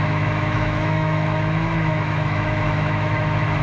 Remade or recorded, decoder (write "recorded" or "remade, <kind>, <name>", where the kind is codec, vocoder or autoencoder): remade, autoencoder, DAC-VAE